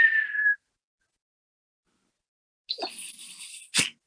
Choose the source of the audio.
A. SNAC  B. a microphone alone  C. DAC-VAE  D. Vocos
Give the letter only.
B